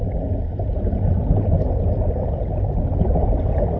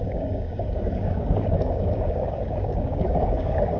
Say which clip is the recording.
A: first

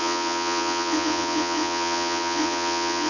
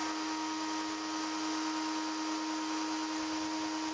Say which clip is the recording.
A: second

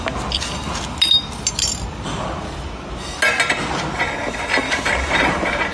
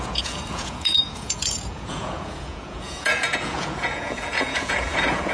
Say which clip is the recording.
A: first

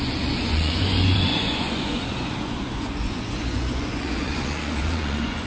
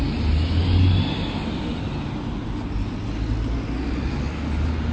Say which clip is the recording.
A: second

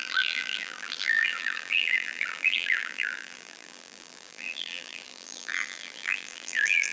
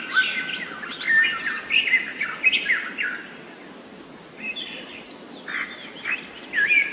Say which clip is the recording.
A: second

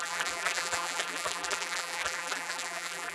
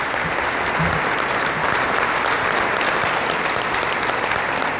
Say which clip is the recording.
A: second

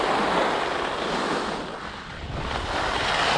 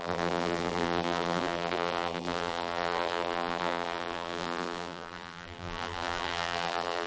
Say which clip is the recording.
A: first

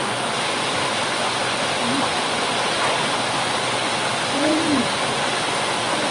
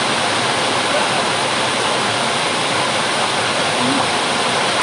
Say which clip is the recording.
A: second